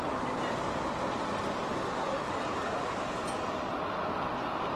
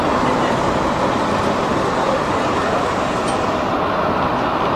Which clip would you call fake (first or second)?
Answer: second